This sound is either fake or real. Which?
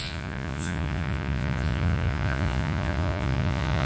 fake